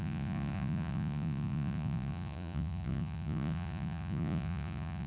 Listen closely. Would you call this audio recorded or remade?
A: remade